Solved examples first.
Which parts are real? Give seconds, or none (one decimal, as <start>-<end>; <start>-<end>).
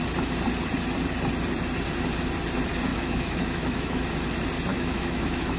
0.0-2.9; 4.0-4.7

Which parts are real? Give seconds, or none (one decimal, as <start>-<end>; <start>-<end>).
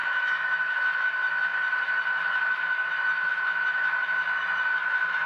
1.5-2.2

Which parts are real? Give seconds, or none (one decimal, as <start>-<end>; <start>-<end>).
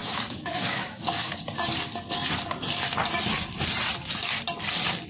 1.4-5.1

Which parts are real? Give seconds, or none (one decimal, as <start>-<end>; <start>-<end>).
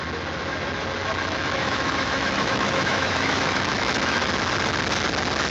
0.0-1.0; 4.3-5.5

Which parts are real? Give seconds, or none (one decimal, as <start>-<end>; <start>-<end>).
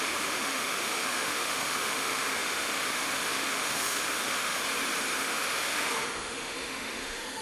4.6-5.2